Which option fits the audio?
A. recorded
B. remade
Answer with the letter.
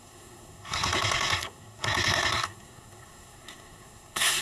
B